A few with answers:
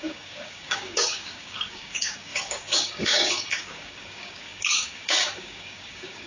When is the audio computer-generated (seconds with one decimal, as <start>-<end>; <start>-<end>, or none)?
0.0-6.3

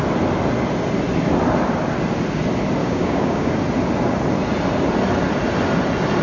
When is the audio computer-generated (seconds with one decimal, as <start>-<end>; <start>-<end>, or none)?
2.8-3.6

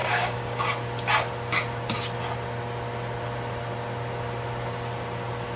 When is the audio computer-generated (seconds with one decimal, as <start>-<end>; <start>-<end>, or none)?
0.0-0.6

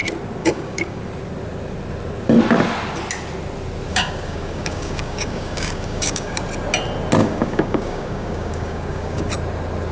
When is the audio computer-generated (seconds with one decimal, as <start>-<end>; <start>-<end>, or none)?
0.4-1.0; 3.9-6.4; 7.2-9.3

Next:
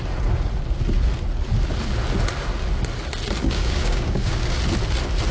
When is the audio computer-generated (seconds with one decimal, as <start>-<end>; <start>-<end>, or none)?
3.4-4.6

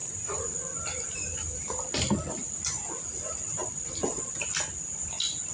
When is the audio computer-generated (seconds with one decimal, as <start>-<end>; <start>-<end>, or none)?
none

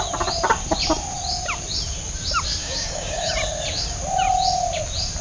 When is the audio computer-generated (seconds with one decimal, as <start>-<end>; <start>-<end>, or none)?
2.6-3.3